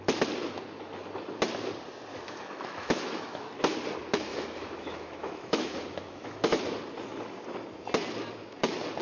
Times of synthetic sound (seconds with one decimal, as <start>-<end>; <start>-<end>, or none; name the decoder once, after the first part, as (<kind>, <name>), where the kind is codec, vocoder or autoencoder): 2.1-3.5 (autoencoder, DAC-VAE); 4.3-6.6